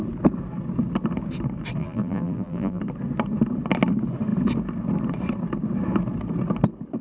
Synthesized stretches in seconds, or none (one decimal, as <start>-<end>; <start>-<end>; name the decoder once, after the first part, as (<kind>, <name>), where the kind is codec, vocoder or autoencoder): 1.8-2.8 (vocoder, BigVGAN v2)